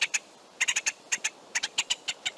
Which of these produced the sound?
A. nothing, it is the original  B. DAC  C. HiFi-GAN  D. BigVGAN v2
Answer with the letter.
D